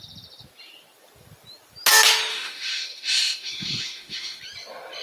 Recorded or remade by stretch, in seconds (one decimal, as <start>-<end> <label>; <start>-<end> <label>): 0.0-2.3 recorded; 2.3-4.4 remade; 4.4-5.0 recorded